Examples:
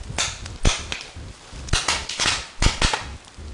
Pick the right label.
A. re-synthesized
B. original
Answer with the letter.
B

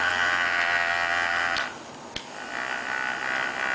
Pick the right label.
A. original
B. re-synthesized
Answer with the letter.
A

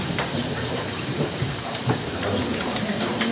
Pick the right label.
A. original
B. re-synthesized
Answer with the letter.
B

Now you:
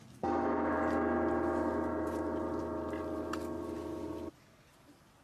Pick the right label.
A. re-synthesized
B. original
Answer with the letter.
B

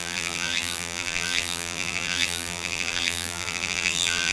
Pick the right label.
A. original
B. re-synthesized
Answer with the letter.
B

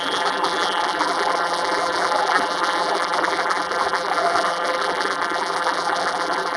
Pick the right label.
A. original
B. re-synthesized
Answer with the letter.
B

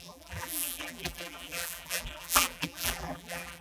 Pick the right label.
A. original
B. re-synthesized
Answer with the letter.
B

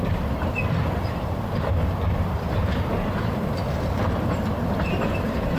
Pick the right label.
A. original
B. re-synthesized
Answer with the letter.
A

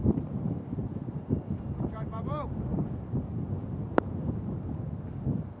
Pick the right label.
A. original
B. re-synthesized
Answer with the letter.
B